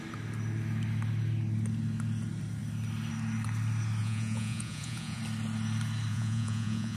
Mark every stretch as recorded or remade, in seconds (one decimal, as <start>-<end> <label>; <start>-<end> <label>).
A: 0.0-4.0 recorded; 4.0-5.2 remade; 5.2-6.1 recorded; 6.1-7.0 remade